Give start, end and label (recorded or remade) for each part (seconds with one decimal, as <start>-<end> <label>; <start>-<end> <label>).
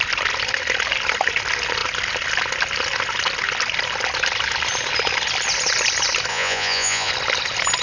0.0-6.3 recorded; 6.3-7.1 remade; 7.1-7.8 recorded